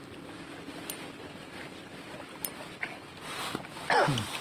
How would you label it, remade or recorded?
recorded